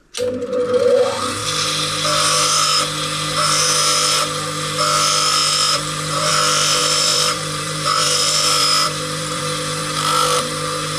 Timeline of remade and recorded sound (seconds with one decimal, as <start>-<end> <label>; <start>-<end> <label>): 0.0-5.4 recorded; 5.4-6.3 remade; 6.3-6.8 recorded; 6.8-9.4 remade; 9.4-11.0 recorded